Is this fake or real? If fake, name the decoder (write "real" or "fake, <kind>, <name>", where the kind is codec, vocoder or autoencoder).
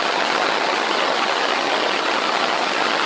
fake, vocoder, HiFi-GAN